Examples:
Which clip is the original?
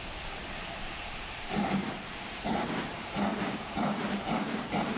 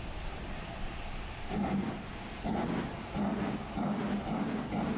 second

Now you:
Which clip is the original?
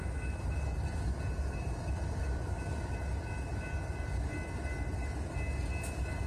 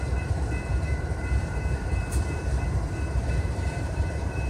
first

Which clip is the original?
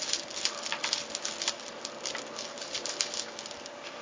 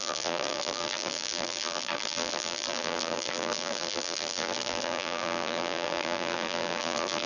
first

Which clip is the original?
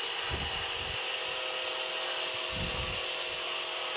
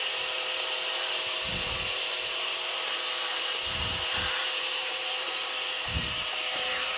first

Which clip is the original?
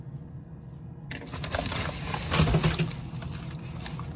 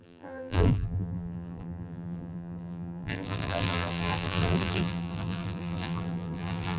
first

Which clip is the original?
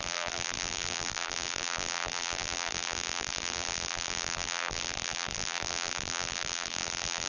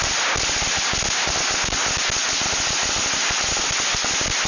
second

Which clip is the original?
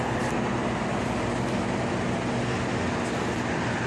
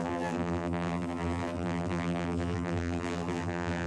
first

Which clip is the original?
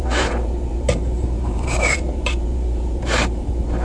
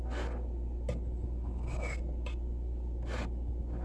second